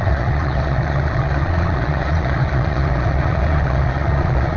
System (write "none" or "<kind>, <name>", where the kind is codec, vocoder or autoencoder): vocoder, Vocos